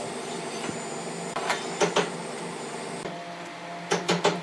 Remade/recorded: recorded